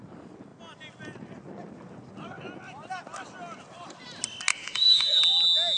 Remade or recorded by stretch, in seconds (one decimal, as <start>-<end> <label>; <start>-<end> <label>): 0.0-4.5 recorded; 4.5-5.2 remade; 5.2-5.8 recorded